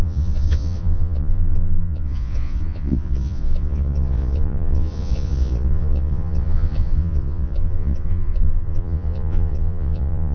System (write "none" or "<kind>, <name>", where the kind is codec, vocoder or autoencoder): vocoder, Vocos